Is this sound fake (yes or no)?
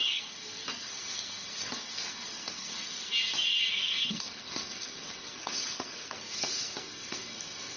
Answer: yes